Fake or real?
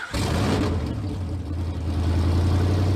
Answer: real